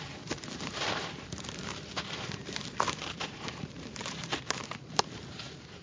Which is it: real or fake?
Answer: fake